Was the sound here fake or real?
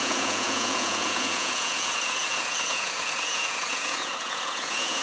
fake